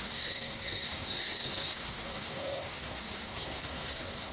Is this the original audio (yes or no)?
no